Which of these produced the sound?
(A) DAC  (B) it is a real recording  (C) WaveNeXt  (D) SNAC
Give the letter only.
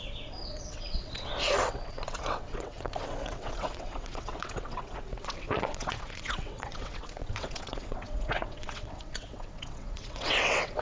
C